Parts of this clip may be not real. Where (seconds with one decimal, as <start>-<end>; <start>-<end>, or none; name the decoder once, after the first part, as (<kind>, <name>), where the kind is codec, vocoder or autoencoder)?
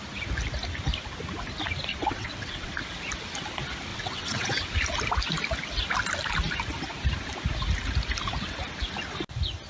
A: 1.9-2.7 (vocoder, WaveNeXt); 3.9-4.6